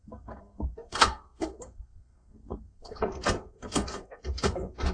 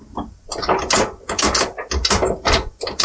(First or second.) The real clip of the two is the second